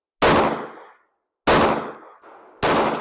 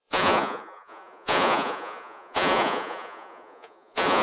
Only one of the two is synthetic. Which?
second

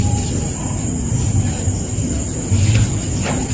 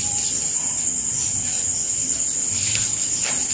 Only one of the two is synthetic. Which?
first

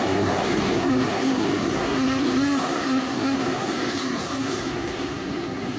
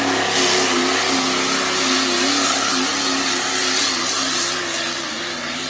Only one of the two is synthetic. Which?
first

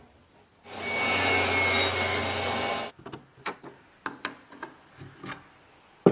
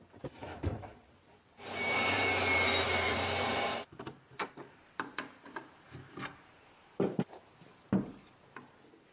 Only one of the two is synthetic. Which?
second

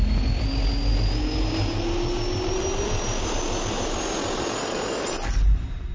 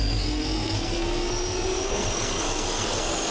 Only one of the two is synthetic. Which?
second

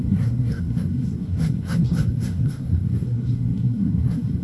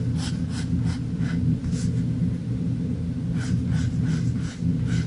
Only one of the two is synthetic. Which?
first